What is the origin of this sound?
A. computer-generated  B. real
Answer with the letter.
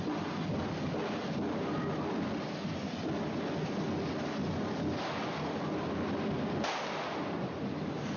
B